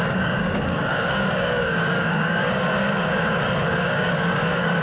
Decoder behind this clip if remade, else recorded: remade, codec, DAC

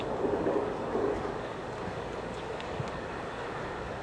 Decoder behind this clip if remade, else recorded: remade, codec, DAC